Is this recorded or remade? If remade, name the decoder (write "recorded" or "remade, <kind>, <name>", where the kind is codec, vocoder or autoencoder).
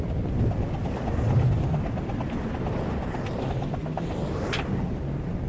recorded